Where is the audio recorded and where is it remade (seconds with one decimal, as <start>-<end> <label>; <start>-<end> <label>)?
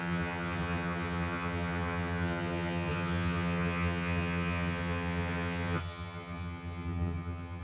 0.0-7.6 remade